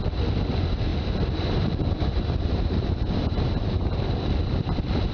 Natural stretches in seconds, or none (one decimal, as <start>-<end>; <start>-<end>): 0.0-0.9; 4.0-5.1